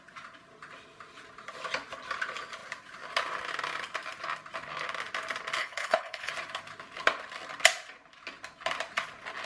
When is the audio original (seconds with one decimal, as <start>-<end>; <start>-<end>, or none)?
0.0-5.6; 6.3-9.5